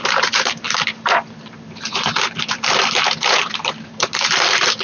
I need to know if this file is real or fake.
fake